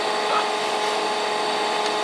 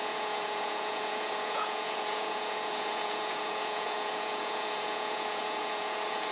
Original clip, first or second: first